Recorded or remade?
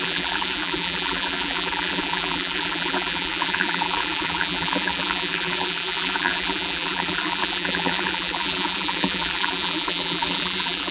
remade